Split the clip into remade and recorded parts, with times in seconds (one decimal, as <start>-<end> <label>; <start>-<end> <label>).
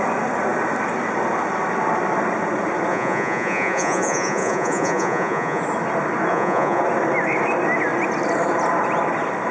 0.0-2.9 recorded; 2.9-5.6 remade; 5.6-6.3 recorded; 6.3-6.8 remade; 6.8-9.5 recorded